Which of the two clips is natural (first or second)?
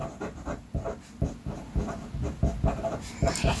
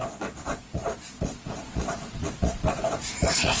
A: first